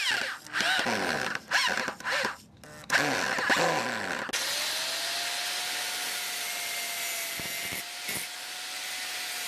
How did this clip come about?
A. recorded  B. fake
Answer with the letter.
A